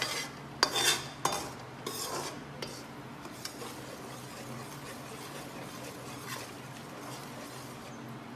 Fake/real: real